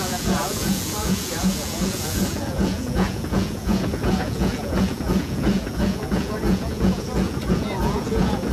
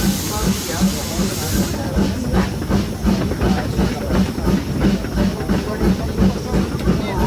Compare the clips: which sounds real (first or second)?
second